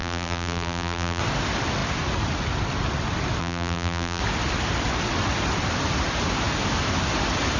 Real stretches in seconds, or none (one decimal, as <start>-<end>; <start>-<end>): 1.2-3.4; 4.2-7.6

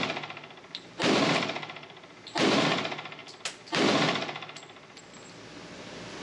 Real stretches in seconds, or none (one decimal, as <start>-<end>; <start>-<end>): 3.2-6.2

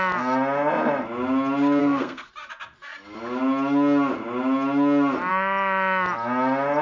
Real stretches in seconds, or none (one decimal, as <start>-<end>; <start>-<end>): 0.0-1.8; 2.3-6.8

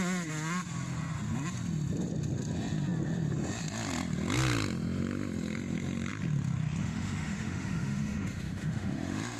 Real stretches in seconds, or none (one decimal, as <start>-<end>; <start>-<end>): 0.0-6.8

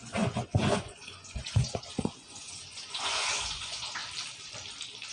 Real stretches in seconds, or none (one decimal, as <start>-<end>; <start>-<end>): 4.0-5.1

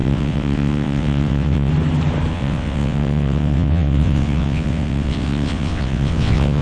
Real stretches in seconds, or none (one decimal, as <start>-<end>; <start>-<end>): 1.7-2.3